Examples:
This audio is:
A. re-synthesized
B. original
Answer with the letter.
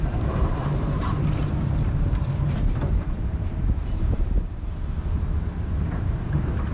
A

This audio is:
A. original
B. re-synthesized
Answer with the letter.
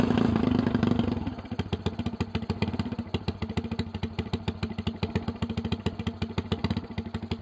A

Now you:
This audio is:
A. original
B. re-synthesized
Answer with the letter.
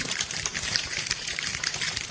B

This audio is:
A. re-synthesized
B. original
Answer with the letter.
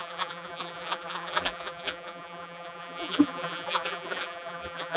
A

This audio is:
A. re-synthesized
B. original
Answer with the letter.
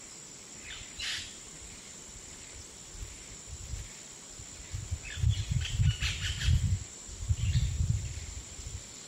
B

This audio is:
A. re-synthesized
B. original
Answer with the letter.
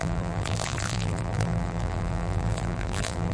A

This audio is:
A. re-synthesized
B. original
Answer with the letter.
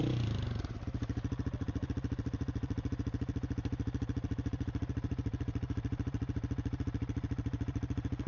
A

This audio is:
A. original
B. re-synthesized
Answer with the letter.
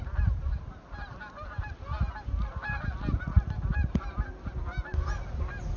A